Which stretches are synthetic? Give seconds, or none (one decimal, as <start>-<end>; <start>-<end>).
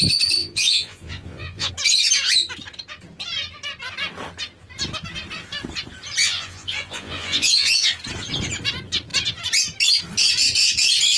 0.4-1.7; 6.2-7.9